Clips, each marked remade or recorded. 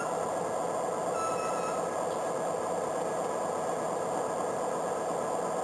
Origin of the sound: recorded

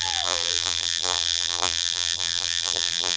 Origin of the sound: remade